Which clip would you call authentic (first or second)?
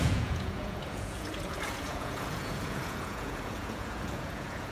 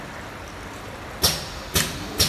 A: second